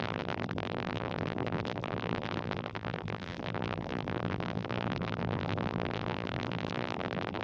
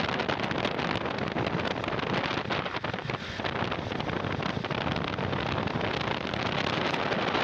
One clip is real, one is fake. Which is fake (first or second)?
first